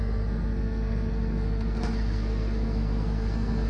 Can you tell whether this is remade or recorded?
remade